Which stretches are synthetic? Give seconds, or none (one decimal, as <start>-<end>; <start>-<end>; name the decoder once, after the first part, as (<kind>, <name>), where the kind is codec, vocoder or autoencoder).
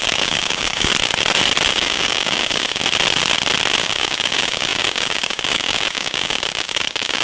0.0-0.9 (codec, DAC); 1.7-2.8; 3.8-7.2